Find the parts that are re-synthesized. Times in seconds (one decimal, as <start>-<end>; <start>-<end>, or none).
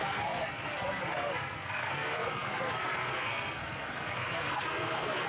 0.0-5.3